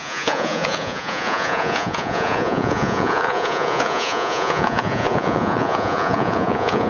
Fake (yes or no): yes